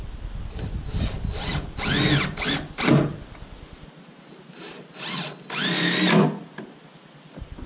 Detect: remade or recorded recorded